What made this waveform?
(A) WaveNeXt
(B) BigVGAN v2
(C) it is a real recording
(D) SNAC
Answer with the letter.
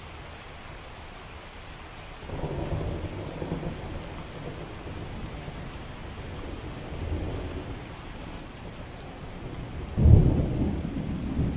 C